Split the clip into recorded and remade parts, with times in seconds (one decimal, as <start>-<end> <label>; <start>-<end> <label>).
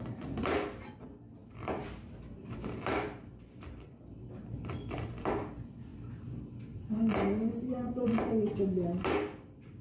0.0-1.4 recorded; 1.4-5.4 remade; 5.4-5.9 recorded; 5.9-6.5 remade; 6.5-7.5 recorded; 7.5-8.2 remade; 8.2-9.8 recorded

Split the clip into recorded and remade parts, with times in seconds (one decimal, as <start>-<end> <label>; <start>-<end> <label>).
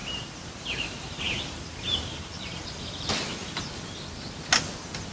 0.0-3.1 remade; 3.1-5.1 recorded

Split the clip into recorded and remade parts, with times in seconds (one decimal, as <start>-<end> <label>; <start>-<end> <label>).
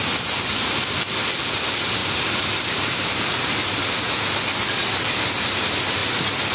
0.0-2.0 recorded; 2.0-4.1 remade; 4.1-6.5 recorded